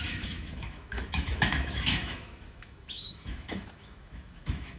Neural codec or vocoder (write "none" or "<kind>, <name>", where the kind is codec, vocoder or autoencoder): autoencoder, DAC-VAE